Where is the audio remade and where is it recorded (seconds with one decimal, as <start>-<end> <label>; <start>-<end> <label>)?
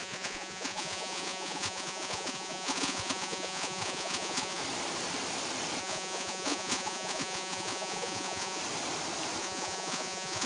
0.0-4.6 remade; 4.6-5.8 recorded; 5.8-8.6 remade; 8.6-9.4 recorded; 9.4-10.5 remade